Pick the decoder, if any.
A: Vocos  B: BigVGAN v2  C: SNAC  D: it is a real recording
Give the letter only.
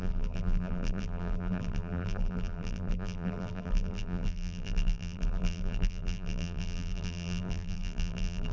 B